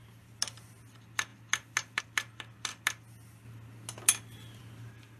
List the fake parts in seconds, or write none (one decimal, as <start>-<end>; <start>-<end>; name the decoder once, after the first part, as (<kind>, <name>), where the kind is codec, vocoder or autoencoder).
none

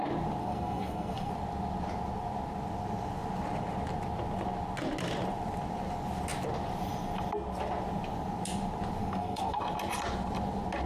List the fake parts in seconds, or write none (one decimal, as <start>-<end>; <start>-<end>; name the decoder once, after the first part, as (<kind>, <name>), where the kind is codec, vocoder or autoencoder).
0.4-1.3 (codec, SNAC); 9.0-9.6

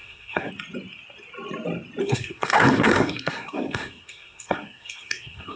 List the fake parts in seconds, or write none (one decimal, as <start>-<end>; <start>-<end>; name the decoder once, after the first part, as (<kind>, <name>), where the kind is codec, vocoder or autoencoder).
0.0-0.5 (codec, SNAC); 2.0-5.6

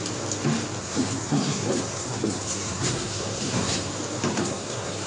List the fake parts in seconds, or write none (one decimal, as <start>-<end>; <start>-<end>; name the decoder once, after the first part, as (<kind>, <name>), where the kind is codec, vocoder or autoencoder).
0.8-3.9 (codec, SNAC); 4.3-5.1

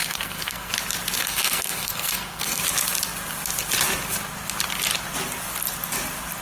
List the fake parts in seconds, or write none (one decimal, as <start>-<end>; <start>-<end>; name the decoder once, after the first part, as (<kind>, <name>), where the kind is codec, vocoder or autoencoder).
0.0-0.7 (codec, SNAC); 1.2-2.6